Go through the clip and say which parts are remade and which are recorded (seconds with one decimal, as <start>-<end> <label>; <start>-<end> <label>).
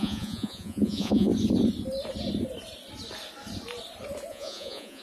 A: 0.0-1.3 remade; 1.3-4.3 recorded; 4.3-5.0 remade